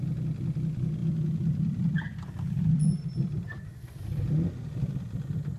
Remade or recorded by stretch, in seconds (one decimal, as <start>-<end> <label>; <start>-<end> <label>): 0.0-1.0 recorded; 1.0-2.7 remade; 2.7-5.6 recorded